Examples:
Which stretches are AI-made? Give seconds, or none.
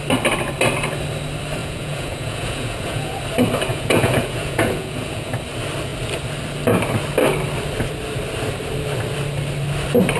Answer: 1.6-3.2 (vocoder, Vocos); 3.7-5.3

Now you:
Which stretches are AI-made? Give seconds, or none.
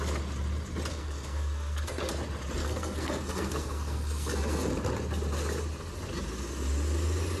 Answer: 0.9-2.1 (codec, SNAC); 2.6-4.7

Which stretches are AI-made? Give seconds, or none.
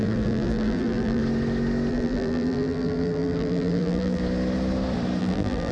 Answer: 0.0-1.2 (vocoder, BigVGAN v2); 1.9-4.2; 5.2-5.7